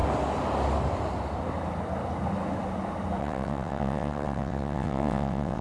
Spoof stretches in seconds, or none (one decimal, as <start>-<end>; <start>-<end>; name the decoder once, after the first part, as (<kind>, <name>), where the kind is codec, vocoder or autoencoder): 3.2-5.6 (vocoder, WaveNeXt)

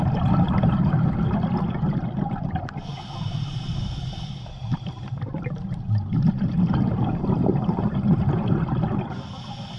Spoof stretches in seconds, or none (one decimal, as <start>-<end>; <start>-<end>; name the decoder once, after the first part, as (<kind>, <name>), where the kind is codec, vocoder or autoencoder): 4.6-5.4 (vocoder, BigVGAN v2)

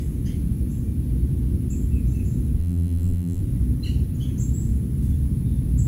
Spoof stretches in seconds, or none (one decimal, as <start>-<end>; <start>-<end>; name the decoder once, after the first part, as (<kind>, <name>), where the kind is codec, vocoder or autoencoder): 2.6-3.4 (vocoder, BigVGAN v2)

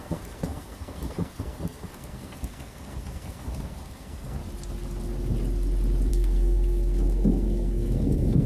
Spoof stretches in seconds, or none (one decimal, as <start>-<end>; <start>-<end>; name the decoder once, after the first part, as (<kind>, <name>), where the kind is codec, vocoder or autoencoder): 0.0-4.4 (codec, SNAC); 6.1-8.5